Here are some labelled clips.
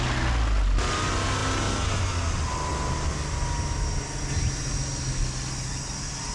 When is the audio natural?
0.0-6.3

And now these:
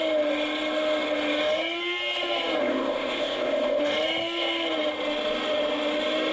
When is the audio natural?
0.0-2.6; 3.8-6.3

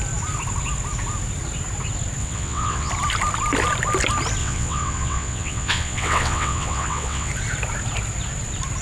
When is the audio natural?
0.0-2.2; 2.9-4.4; 7.3-8.8